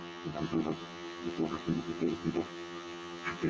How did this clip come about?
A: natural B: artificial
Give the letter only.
B